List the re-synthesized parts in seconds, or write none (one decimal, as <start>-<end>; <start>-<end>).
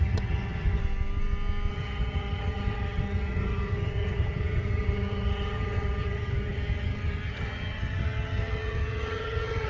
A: 0.0-0.8; 1.7-9.7